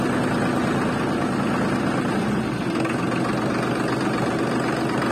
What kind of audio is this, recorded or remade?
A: recorded